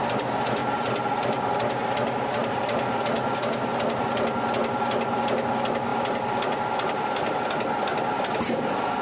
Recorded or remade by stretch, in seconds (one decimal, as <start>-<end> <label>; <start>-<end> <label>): 0.0-9.0 recorded

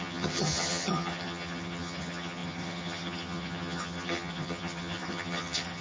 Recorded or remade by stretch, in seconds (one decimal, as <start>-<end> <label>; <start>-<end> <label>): 0.0-5.8 remade